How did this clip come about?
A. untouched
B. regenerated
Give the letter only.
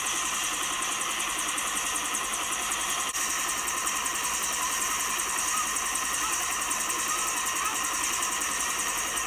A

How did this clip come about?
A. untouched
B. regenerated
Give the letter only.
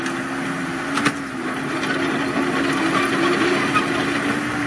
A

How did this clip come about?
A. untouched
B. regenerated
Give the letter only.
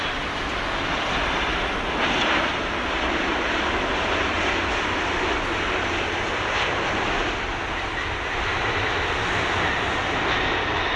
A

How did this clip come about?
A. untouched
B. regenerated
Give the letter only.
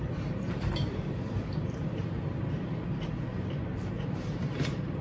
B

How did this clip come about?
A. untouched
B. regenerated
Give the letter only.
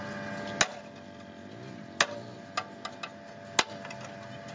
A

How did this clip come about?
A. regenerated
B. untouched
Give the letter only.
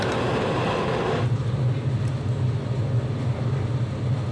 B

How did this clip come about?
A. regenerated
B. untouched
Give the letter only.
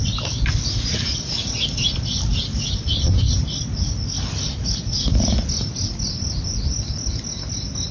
B